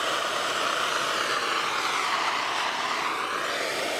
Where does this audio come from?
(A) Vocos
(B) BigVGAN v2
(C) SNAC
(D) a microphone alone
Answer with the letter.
D